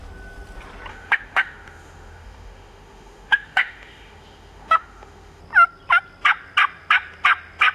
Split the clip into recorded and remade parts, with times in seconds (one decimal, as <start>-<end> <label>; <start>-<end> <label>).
0.0-0.9 recorded; 0.9-5.4 remade; 5.4-7.7 recorded